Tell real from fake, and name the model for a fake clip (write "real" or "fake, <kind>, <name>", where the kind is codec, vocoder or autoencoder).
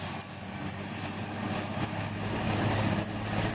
real